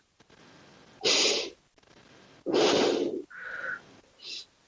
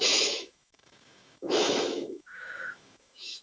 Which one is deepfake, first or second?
second